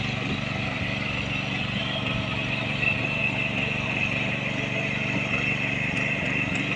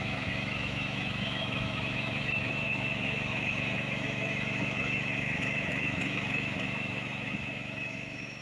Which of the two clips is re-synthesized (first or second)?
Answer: second